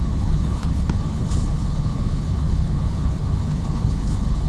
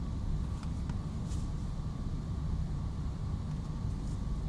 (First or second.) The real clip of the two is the second